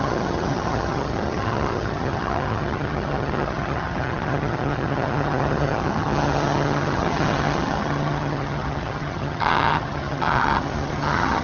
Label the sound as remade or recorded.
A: remade